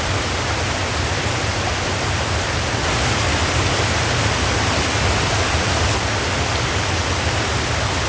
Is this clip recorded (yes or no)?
yes